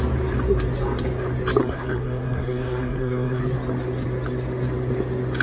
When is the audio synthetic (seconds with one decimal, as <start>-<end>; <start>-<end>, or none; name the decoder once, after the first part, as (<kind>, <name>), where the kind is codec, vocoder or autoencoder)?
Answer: 1.6-3.4 (codec, SNAC)